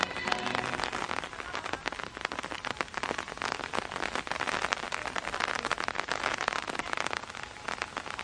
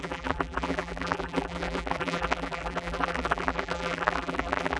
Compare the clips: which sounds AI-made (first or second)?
second